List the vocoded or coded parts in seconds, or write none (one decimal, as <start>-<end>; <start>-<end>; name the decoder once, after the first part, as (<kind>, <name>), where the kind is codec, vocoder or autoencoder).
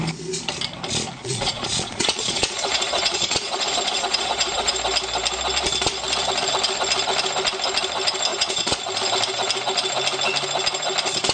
1.2-4.7 (vocoder, Vocos); 8.3-8.8